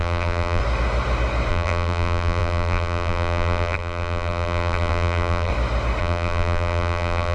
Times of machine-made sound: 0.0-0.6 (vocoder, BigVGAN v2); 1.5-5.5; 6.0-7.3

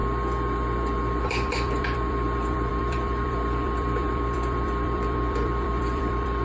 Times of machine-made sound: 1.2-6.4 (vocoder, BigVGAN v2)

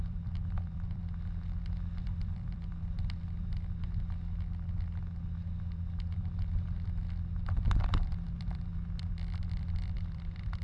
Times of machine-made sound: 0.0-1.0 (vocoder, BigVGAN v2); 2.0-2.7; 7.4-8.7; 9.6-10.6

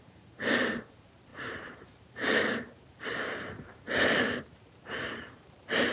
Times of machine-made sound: 0.0-5.9 (vocoder, BigVGAN v2)